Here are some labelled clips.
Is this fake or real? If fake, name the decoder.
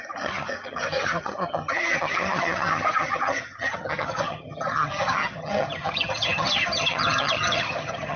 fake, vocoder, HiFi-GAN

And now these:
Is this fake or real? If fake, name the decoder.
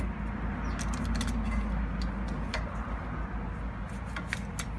real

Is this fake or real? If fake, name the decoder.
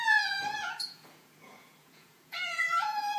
fake, vocoder, Vocos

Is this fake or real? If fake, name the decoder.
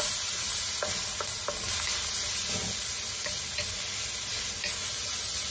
real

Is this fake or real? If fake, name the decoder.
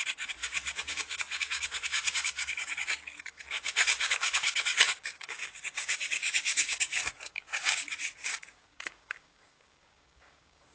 fake, codec, DAC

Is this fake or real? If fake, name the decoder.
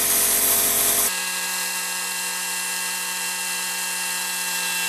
fake, vocoder, BigVGAN v2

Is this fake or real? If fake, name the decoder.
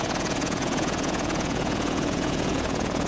fake, vocoder, Vocos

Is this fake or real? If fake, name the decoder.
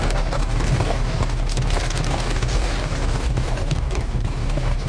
fake, codec, DAC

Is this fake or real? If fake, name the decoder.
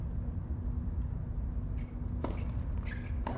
real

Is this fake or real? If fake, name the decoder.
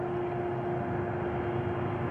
real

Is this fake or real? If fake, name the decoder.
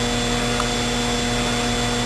real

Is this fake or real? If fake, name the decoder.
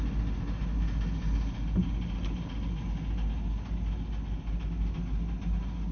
real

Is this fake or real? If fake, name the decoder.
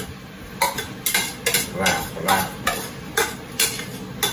real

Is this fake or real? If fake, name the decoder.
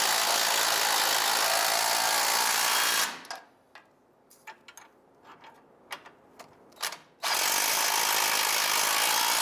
real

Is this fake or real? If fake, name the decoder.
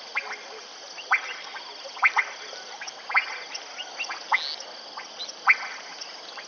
real